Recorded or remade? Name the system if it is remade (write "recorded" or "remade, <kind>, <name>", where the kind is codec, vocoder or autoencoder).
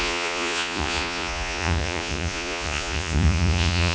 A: remade, vocoder, Vocos